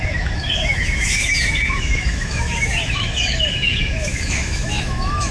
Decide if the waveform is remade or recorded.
remade